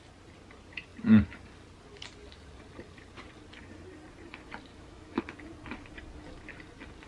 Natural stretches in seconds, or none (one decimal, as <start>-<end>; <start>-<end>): 0.0-4.7; 5.2-7.1

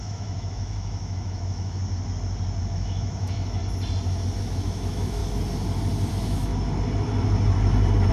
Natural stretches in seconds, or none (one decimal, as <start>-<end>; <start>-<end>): 1.8-2.6; 3.6-4.4; 5.2-6.1; 6.5-8.1

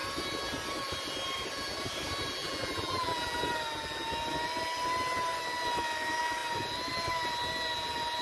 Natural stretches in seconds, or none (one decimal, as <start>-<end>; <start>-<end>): 0.0-2.4; 3.4-8.2

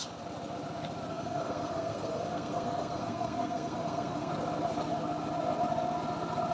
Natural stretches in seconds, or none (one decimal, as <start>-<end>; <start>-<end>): 0.0-1.1; 4.3-6.5

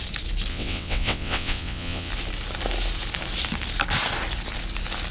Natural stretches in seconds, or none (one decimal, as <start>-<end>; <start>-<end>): 0.0-0.5; 2.1-5.1

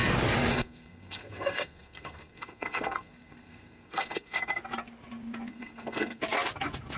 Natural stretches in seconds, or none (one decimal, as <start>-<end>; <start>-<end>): 0.0-0.5; 4.6-5.5; 6.2-7.0

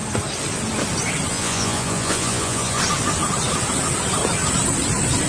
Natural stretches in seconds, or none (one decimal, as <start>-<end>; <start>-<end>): 0.0-1.3; 2.8-5.3

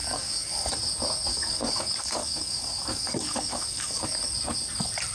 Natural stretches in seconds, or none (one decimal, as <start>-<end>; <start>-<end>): 0.7-1.3; 4.1-5.1